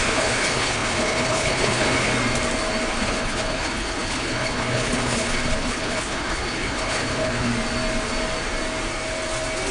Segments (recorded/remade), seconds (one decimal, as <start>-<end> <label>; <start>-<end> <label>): 0.0-2.1 remade; 2.1-3.0 recorded; 3.0-7.5 remade; 7.5-9.7 recorded